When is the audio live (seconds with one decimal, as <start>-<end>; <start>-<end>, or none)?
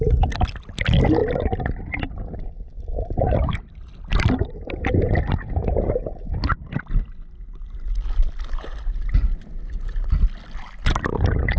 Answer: 0.0-11.6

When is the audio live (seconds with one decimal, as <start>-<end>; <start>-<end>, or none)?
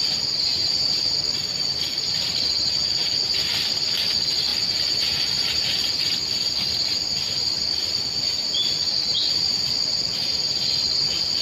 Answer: 0.0-0.5; 1.0-11.4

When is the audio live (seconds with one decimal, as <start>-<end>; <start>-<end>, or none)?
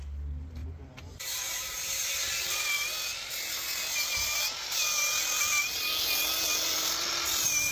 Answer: 0.0-0.6; 2.6-7.7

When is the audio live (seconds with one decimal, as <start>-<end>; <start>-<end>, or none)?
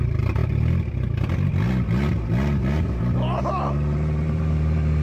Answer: 0.4-3.4